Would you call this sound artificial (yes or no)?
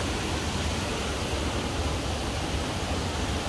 no